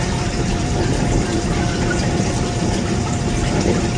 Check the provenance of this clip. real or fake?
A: fake